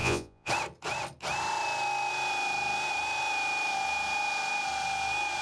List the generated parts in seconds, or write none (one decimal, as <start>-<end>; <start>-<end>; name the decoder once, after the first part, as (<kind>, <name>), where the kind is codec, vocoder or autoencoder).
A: 0.0-0.5 (vocoder, Vocos)